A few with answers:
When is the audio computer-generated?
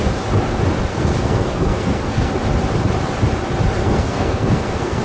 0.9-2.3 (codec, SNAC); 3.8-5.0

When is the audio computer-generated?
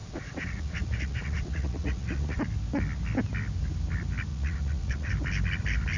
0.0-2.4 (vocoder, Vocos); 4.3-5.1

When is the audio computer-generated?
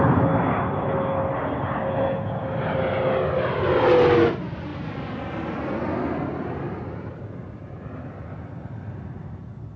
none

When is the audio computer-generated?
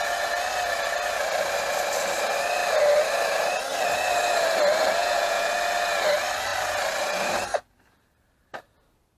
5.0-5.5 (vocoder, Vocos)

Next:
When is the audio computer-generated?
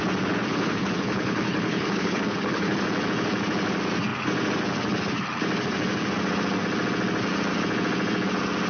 0.5-2.8 (codec, HILCodec)